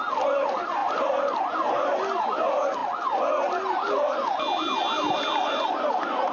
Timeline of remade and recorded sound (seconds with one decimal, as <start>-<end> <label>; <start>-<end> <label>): 0.0-6.3 recorded